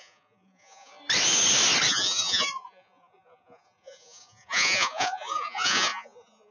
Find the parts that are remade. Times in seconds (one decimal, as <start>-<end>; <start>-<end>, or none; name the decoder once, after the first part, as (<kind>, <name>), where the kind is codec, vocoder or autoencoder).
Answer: 0.0-1.0 (vocoder, Vocos); 1.9-6.5